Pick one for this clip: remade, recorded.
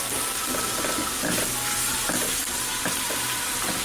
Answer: recorded